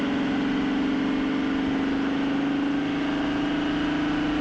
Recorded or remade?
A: recorded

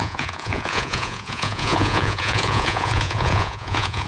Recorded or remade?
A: remade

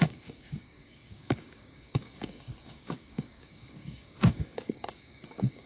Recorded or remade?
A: remade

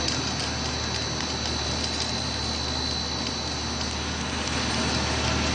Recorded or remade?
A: recorded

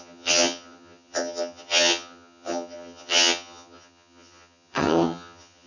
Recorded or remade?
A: remade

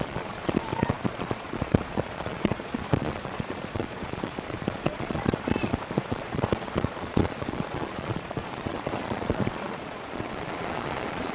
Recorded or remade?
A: remade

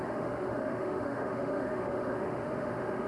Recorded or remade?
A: remade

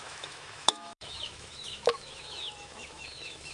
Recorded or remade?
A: remade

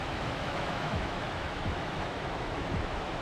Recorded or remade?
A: remade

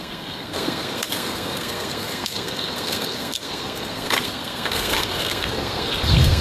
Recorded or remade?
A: remade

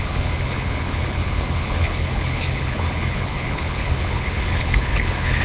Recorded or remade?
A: remade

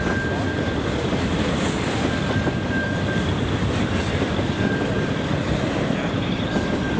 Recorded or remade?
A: remade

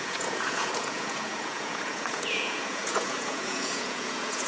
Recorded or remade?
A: remade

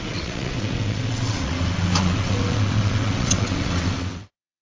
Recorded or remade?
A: remade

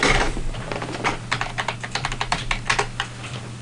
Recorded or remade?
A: recorded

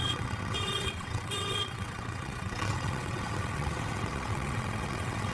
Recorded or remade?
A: remade